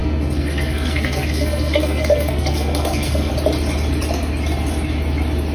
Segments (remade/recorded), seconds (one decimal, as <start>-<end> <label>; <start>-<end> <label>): 0.0-3.3 remade; 3.3-5.5 recorded